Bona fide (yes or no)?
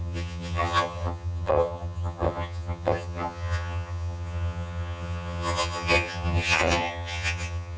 no